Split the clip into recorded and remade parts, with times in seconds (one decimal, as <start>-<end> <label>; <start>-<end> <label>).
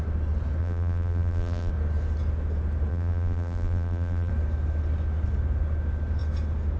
0.0-0.6 recorded; 0.6-1.7 remade; 1.7-2.9 recorded; 2.9-4.3 remade; 4.3-6.8 recorded